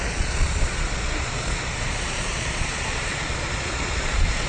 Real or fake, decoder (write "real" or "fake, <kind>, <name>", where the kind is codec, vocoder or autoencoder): fake, vocoder, Vocos